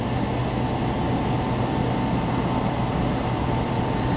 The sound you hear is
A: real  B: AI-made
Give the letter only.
A